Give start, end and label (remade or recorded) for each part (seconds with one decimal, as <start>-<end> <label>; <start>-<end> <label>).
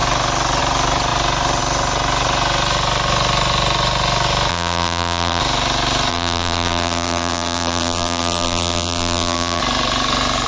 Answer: 0.0-4.5 recorded; 4.5-5.4 remade; 5.4-6.1 recorded; 6.1-9.6 remade; 9.6-10.5 recorded